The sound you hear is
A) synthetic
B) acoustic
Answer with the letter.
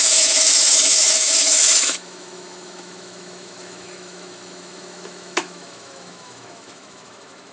A